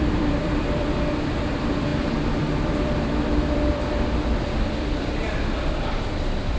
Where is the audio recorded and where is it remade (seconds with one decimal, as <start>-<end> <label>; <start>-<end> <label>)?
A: 0.0-6.6 remade